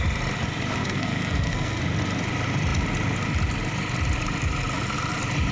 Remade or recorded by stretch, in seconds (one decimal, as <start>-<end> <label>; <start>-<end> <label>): 0.0-0.8 recorded; 0.8-1.8 remade; 1.8-5.5 recorded